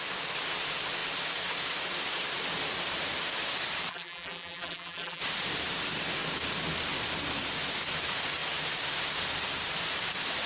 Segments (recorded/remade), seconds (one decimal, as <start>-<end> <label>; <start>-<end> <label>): 0.0-3.9 recorded; 3.9-5.2 remade; 5.2-10.5 recorded